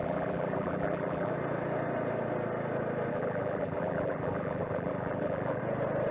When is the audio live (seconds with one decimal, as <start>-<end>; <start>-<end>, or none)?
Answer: 1.3-3.1; 5.6-6.1